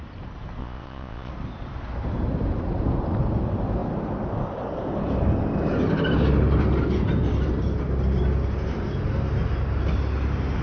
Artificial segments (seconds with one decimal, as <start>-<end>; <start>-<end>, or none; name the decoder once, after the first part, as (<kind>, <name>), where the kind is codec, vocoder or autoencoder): 0.6-1.3 (vocoder, Vocos)